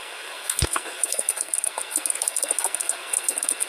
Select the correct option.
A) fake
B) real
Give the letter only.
A